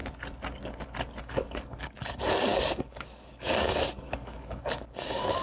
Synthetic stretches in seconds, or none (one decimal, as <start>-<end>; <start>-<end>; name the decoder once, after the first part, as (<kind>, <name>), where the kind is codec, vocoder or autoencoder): 1.2-5.4 (codec, DAC)